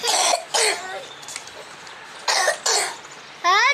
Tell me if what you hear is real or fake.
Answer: real